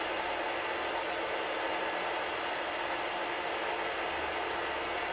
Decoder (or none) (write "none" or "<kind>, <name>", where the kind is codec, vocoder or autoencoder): none